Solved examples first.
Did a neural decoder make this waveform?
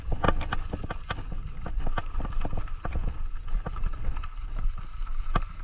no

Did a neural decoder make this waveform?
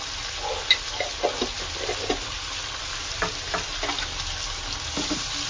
no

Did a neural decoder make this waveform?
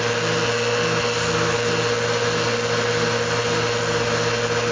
no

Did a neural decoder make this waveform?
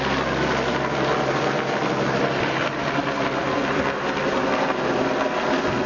no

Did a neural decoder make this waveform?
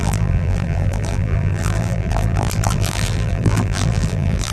yes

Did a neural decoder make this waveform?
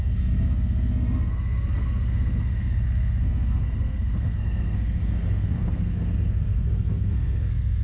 yes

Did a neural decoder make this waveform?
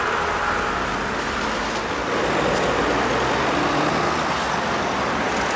no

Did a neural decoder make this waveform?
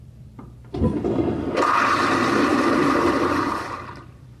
yes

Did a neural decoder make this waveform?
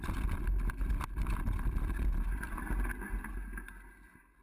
no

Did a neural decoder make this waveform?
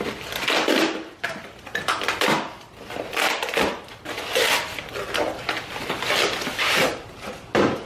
no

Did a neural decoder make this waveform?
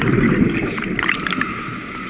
no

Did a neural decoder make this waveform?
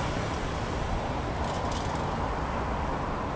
no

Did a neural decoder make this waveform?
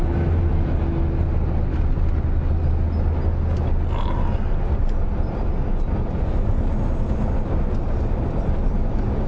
no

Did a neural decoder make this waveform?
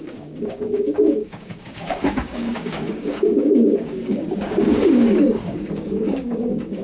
yes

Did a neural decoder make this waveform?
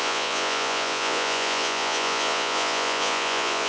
yes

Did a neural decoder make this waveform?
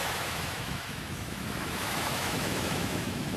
yes